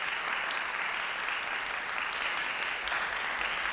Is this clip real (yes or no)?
yes